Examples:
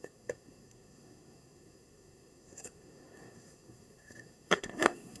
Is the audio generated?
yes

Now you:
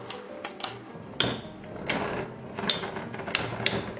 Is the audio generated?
no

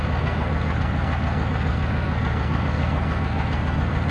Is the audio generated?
yes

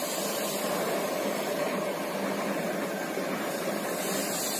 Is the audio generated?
no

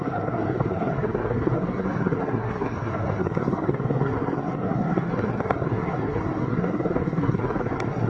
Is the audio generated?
yes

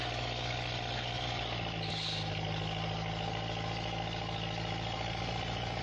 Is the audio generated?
no